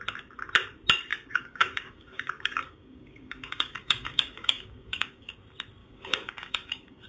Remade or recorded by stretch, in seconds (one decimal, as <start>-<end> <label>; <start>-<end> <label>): 0.0-1.1 recorded; 1.1-5.3 remade; 5.3-5.8 recorded; 5.8-7.1 remade